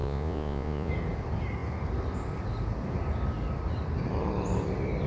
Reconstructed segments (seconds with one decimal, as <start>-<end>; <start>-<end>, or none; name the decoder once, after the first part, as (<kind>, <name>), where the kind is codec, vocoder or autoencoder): 0.0-0.9 (vocoder, Vocos)